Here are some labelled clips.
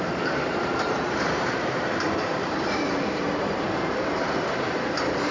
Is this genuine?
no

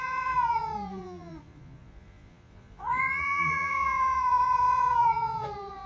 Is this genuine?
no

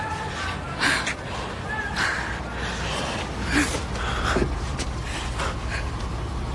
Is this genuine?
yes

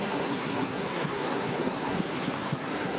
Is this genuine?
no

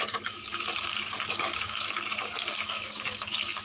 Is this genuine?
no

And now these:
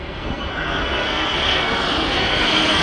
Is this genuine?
no